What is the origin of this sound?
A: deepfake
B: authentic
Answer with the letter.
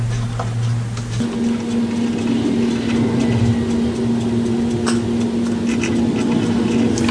B